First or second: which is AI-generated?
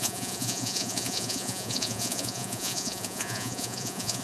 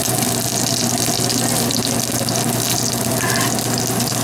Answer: first